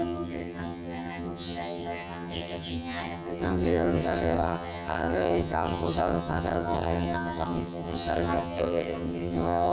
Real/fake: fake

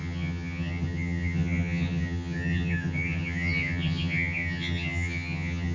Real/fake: fake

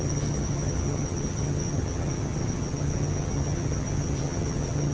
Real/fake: fake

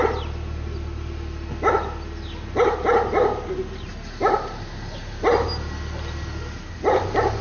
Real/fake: real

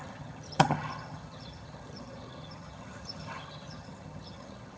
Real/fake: fake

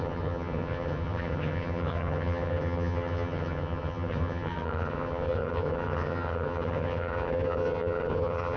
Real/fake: fake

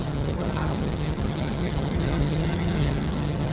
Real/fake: fake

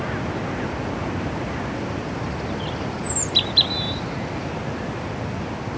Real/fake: real